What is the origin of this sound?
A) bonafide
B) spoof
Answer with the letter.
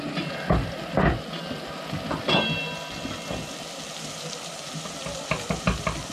A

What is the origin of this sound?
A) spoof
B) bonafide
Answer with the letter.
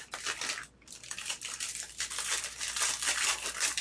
B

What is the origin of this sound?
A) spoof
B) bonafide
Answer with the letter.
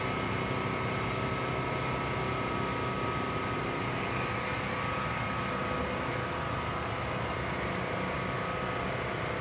B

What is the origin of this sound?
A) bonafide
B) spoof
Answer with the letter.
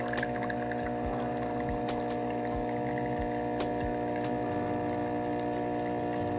A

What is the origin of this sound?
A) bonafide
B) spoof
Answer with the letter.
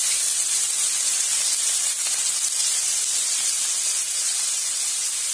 A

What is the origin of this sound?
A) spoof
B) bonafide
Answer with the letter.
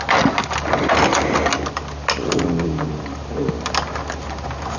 B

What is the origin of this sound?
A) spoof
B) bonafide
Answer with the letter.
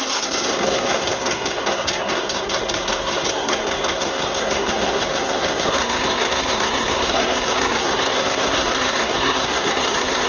A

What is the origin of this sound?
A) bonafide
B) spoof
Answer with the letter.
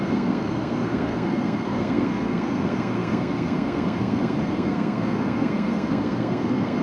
B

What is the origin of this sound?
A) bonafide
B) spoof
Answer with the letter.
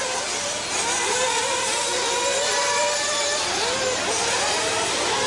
A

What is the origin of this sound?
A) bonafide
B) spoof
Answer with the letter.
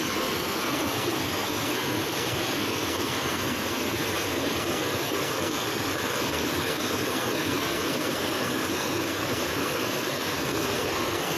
B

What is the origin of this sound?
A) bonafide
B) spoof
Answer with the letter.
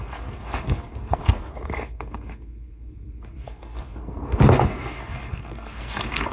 B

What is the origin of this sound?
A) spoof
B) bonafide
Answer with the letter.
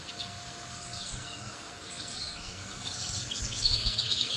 A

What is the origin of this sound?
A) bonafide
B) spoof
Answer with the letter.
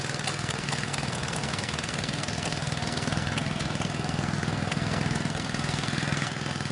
B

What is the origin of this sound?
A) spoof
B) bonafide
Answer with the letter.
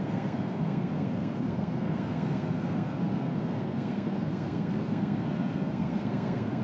A